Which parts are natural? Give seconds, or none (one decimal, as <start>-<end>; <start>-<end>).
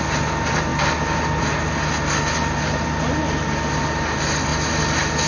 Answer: 0.0-5.3